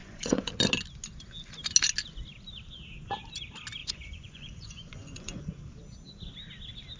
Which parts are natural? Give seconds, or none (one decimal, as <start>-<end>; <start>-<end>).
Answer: 0.5-3.8; 5.5-7.0